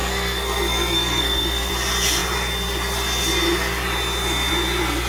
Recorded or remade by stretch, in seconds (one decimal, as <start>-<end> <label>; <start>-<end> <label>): 0.0-1.7 remade; 1.7-5.1 recorded